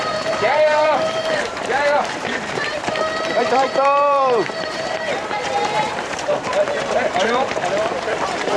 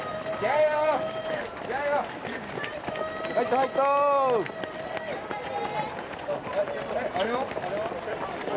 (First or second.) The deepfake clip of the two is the first